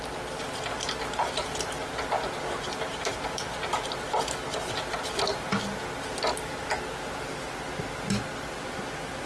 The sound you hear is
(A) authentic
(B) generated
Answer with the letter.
A